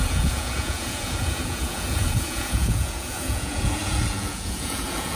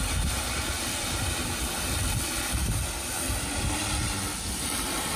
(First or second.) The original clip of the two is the second